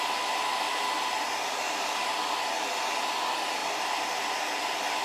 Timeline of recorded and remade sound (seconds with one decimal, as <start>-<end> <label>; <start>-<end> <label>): 0.0-3.6 recorded; 3.6-4.3 remade; 4.3-5.0 recorded